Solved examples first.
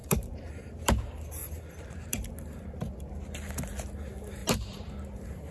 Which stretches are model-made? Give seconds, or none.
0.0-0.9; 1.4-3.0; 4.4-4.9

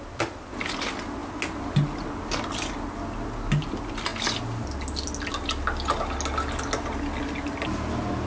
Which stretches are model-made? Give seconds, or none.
none